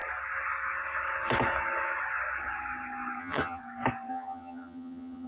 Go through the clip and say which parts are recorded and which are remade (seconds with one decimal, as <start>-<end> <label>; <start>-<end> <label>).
0.0-3.2 recorded; 3.2-3.6 remade; 3.6-4.1 recorded; 4.1-5.3 remade